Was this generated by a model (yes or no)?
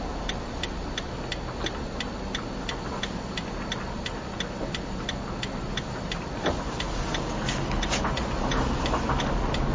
no